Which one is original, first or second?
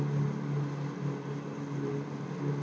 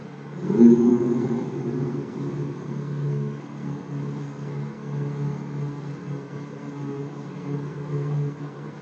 first